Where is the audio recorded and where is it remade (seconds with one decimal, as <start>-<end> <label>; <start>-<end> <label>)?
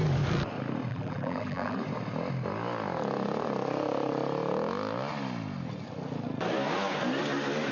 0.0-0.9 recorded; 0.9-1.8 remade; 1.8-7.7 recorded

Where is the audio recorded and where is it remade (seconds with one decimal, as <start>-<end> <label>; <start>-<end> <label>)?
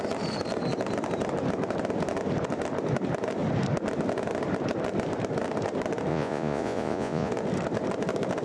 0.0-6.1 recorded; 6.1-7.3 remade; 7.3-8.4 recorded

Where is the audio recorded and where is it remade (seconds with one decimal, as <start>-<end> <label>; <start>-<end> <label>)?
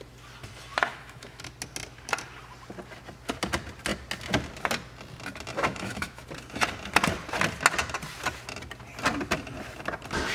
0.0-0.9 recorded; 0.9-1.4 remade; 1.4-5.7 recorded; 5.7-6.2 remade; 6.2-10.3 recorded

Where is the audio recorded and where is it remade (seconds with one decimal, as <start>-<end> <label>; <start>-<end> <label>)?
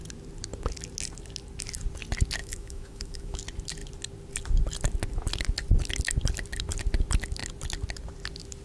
0.0-2.4 recorded; 2.4-3.4 remade; 3.4-8.6 recorded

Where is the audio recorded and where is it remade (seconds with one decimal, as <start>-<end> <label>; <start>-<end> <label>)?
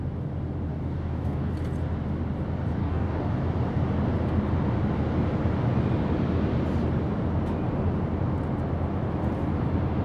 0.0-0.7 recorded; 0.7-1.5 remade; 1.5-2.8 recorded; 2.8-3.3 remade; 3.3-10.0 recorded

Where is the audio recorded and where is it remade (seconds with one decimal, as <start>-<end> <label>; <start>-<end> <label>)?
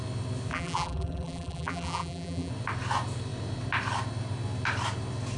0.0-0.5 recorded; 0.5-2.5 remade; 2.5-5.4 recorded